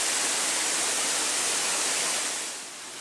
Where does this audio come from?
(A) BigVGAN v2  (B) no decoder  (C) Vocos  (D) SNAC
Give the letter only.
B